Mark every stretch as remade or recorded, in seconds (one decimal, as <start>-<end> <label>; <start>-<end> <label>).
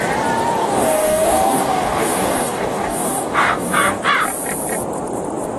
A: 0.0-0.6 recorded; 0.6-4.0 remade; 4.0-5.6 recorded